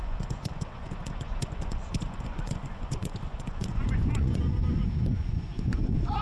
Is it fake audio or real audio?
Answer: fake